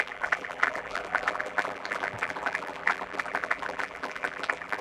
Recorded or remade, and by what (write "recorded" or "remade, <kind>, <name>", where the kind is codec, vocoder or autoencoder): remade, vocoder, BigVGAN v2